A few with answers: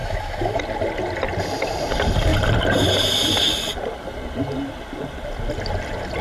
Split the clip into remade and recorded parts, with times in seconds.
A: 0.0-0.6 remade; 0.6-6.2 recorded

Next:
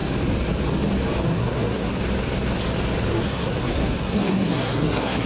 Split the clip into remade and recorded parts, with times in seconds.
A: 0.0-1.3 recorded; 1.3-2.0 remade; 2.0-3.1 recorded; 3.1-5.3 remade

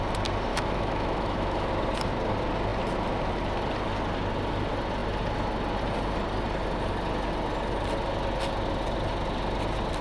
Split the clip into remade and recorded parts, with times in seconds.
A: 0.0-0.5 recorded; 0.5-1.7 remade; 1.7-10.0 recorded